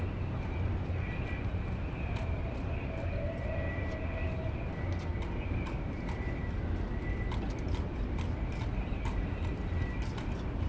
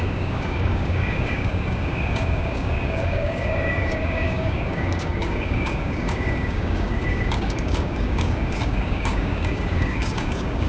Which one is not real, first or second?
second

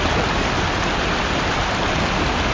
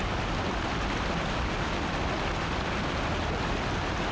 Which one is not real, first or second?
first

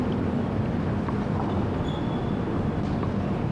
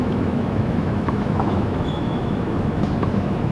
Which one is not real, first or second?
second